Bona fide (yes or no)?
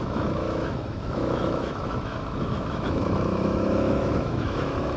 no